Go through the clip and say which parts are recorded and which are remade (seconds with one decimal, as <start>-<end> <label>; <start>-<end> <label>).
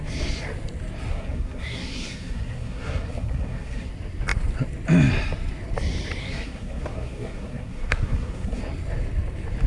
0.0-1.1 recorded; 1.1-3.9 remade; 3.9-6.2 recorded; 6.2-8.6 remade; 8.6-9.7 recorded